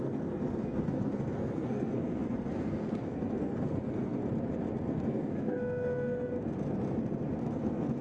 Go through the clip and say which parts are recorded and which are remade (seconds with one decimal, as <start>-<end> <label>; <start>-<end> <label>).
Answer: 0.0-4.2 remade; 4.2-4.9 recorded; 4.9-6.3 remade; 6.3-7.4 recorded; 7.4-8.0 remade

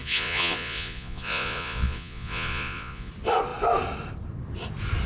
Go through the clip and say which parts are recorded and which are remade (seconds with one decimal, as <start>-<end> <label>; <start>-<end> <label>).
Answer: 0.0-3.1 remade; 3.1-5.1 recorded

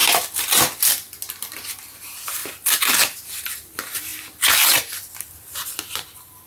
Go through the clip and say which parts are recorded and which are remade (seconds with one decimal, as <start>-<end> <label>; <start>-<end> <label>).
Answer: 0.0-1.4 recorded; 1.4-2.4 remade; 2.4-2.9 recorded; 2.9-6.5 remade

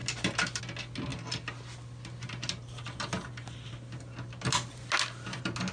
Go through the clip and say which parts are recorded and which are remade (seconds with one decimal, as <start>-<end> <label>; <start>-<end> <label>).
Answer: 0.0-5.7 recorded

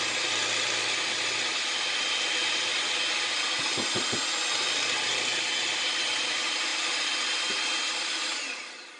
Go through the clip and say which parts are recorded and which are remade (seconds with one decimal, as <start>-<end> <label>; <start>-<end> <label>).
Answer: 0.0-9.0 recorded

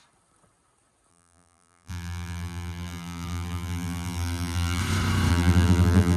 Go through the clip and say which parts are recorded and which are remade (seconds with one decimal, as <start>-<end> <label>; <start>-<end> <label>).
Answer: 0.0-1.1 recorded; 1.1-4.8 remade; 4.8-5.3 recorded; 5.3-6.2 remade

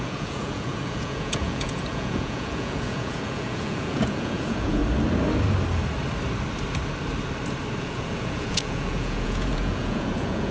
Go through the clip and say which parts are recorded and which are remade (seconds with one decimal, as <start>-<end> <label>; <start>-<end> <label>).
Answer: 0.0-4.8 remade; 4.8-7.8 recorded; 7.8-10.5 remade